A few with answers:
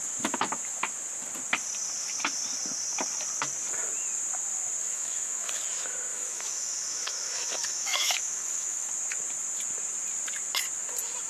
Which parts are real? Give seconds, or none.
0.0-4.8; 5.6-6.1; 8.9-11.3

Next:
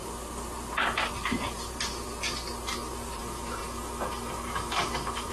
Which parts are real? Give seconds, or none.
0.0-3.2

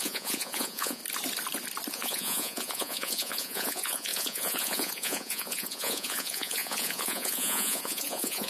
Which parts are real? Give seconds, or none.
1.0-1.9

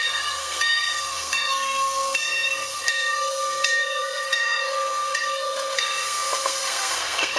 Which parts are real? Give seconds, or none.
none

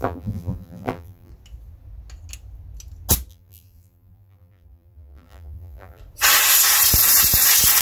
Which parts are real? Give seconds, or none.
1.3-3.3; 6.0-7.8

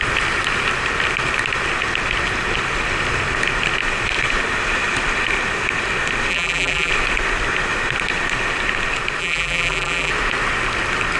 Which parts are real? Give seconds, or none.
0.0-6.3; 6.9-9.2; 10.1-11.2

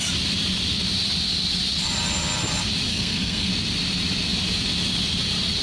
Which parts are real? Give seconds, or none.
0.0-2.9; 3.5-5.6